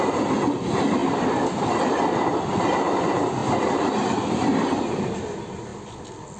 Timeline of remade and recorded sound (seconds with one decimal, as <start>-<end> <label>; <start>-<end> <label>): 0.0-1.0 remade; 1.0-2.6 recorded; 2.6-5.7 remade; 5.7-6.4 recorded